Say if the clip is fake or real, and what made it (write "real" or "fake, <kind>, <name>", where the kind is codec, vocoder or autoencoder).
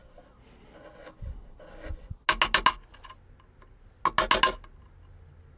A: real